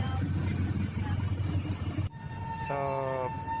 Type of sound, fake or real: real